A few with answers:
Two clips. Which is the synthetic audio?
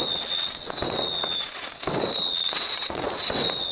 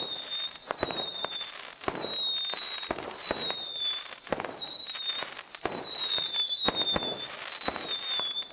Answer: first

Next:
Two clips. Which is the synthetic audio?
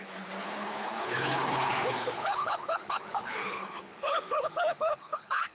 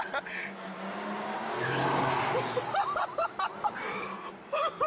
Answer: first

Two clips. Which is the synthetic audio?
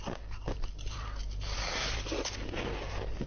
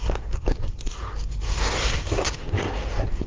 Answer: second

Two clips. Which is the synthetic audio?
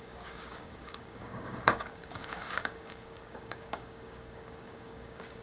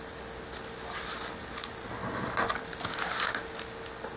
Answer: first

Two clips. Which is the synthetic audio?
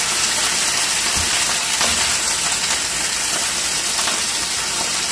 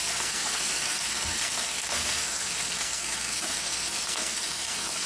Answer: second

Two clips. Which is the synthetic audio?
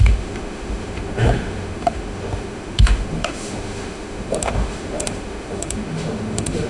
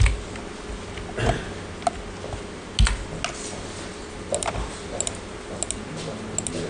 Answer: first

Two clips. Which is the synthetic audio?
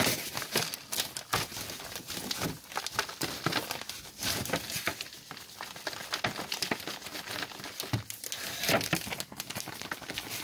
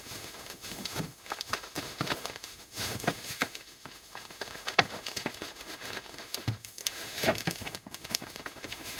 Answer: second